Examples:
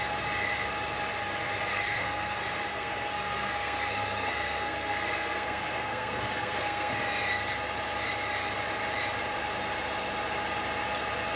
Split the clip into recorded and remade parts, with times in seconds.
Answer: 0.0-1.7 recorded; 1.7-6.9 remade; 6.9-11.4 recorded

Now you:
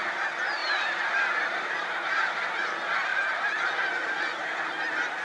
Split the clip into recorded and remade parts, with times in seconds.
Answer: 0.0-0.6 recorded; 0.6-2.2 remade; 2.2-3.1 recorded; 3.1-3.7 remade; 3.7-5.2 recorded

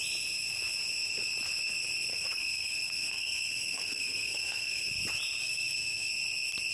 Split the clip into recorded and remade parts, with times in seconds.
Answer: 0.0-2.1 recorded; 2.1-4.9 remade; 4.9-5.4 recorded; 5.4-6.1 remade; 6.1-6.7 recorded

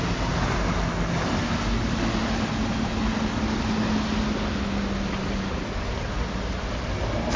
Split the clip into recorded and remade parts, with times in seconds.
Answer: 0.0-7.4 recorded

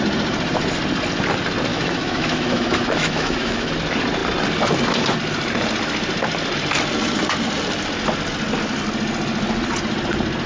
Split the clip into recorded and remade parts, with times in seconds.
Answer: 0.0-1.7 recorded; 1.7-3.7 remade; 3.7-10.5 recorded

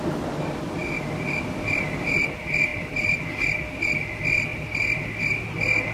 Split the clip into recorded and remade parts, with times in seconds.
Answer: 0.0-2.7 recorded; 2.7-3.4 remade; 3.4-4.5 recorded; 4.5-5.4 remade; 5.4-5.9 recorded

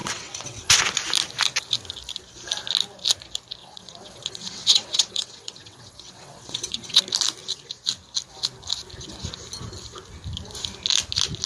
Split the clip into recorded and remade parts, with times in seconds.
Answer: 0.0-0.8 remade; 0.8-3.6 recorded; 3.6-7.0 remade; 7.0-11.5 recorded

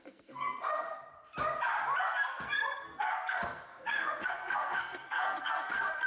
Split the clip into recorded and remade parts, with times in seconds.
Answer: 0.0-1.1 remade; 1.1-2.0 recorded; 2.0-6.1 remade